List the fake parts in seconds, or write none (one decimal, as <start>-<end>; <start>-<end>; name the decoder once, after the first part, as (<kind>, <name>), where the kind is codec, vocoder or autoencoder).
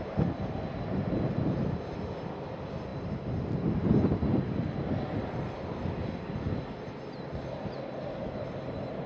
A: none